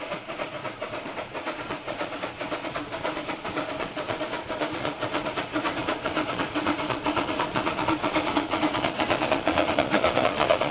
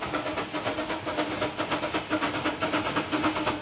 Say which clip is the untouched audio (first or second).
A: second